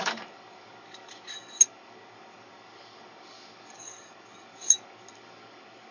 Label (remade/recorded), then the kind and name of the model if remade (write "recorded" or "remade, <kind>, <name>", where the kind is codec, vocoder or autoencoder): remade, codec, DAC